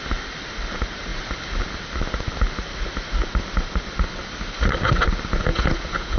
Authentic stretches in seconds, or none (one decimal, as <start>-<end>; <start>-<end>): 0.0-5.5